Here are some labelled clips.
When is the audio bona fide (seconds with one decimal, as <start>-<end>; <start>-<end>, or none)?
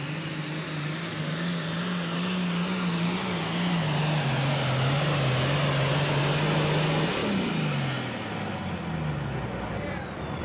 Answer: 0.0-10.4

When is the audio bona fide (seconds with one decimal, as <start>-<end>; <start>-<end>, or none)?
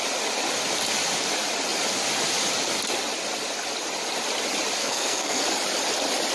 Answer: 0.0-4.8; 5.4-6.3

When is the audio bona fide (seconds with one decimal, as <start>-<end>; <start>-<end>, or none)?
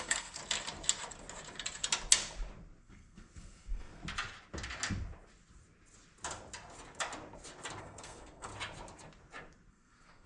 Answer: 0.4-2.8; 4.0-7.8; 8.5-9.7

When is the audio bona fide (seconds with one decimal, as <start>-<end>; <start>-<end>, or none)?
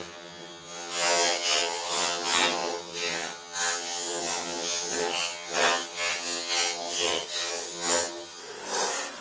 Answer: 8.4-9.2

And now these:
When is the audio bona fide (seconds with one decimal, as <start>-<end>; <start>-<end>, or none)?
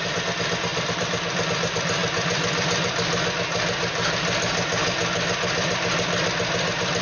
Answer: 0.0-0.7; 1.5-7.0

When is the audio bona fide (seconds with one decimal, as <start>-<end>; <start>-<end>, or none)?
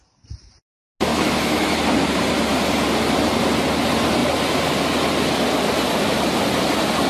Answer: 0.0-1.1; 1.8-7.1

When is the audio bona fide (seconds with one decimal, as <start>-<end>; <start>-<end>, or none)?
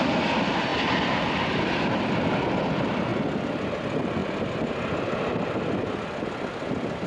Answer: 0.0-7.1